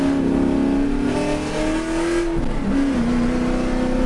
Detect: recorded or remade recorded